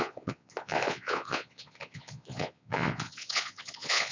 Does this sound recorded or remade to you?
remade